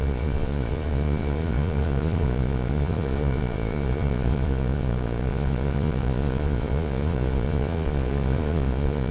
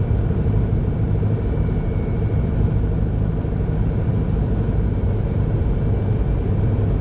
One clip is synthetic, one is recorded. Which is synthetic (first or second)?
first